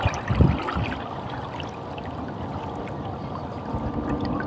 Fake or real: real